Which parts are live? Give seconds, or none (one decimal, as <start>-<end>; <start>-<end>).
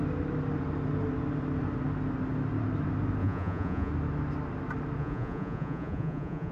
0.0-3.2; 3.9-5.0